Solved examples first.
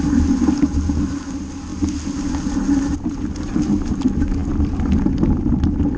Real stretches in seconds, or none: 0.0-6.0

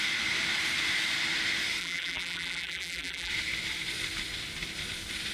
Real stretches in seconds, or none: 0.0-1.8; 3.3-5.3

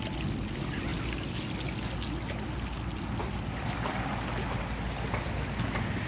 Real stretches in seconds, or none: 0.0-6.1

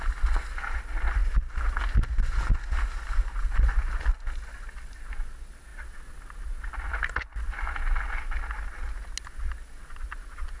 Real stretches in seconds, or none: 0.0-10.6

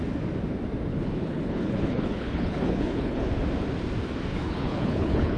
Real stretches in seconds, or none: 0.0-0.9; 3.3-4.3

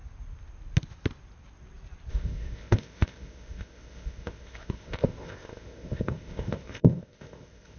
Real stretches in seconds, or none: 0.0-2.1